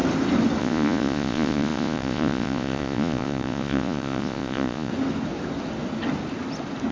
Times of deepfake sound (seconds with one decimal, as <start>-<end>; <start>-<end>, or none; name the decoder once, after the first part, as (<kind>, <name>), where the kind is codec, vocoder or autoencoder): 0.6-4.9 (vocoder, Vocos)